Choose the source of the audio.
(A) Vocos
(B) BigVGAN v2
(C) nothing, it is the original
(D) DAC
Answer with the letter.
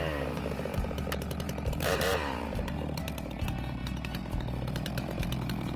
B